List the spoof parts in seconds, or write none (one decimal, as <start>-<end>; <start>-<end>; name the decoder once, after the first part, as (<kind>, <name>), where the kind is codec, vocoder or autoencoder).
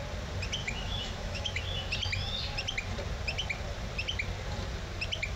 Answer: 0.6-1.6 (autoencoder, DAC-VAE)